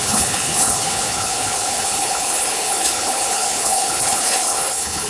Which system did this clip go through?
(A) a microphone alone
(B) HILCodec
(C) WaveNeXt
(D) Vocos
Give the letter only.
B